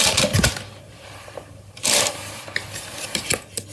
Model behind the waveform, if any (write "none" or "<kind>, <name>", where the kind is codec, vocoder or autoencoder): none